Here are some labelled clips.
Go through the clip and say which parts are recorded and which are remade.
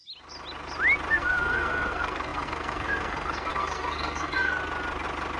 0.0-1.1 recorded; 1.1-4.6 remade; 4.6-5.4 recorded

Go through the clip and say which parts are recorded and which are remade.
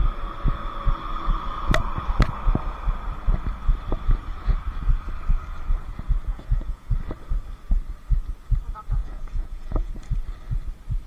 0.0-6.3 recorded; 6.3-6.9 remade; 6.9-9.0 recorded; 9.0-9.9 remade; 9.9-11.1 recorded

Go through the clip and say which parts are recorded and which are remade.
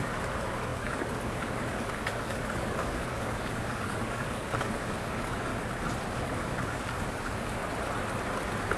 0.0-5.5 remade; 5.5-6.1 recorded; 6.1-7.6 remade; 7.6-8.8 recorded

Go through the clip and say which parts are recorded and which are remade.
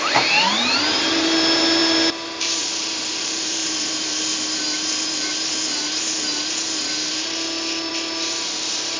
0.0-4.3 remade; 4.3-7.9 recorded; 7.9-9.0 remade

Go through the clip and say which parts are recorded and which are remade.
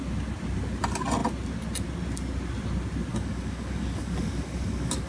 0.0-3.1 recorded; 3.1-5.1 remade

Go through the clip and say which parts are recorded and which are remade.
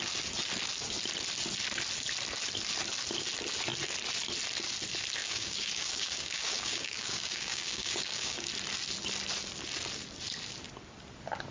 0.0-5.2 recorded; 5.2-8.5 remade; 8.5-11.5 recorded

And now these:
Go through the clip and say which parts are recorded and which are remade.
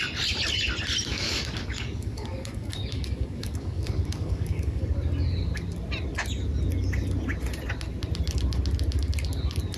0.0-1.1 recorded; 1.1-4.8 remade; 4.8-9.8 recorded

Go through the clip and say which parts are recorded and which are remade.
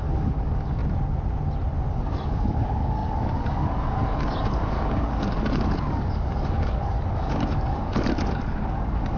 0.0-0.8 remade; 0.8-1.9 recorded; 1.9-9.2 remade